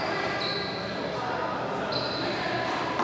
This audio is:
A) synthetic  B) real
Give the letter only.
B